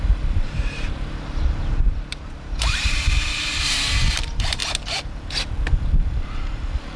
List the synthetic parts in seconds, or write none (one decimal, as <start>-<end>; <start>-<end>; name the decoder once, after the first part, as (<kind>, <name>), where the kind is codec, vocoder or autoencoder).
0.0-4.6 (vocoder, BigVGAN v2); 6.2-7.0